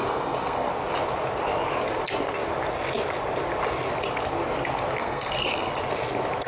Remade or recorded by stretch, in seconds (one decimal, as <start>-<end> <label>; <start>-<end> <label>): 0.0-0.7 remade; 0.7-5.0 recorded; 5.0-5.7 remade; 5.7-6.5 recorded